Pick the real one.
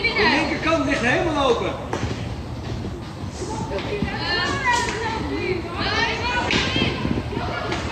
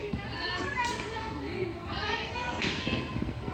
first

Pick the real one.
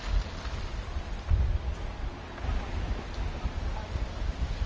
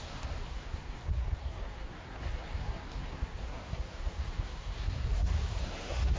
first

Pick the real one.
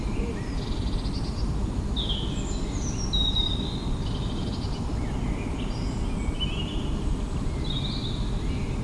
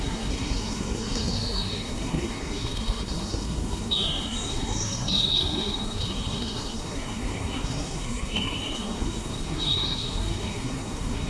first